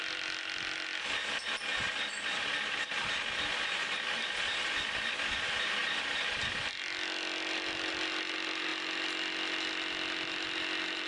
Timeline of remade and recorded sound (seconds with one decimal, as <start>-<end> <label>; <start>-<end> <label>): 0.0-11.1 recorded